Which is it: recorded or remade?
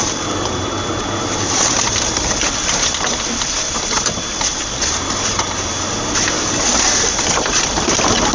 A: remade